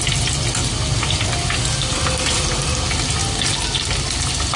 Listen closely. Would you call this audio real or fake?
real